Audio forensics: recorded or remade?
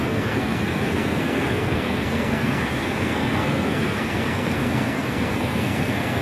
remade